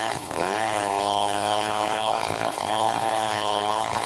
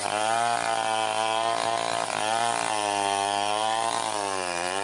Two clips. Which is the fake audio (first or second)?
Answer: first